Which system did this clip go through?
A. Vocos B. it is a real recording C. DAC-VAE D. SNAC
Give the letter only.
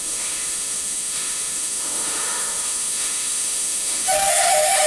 C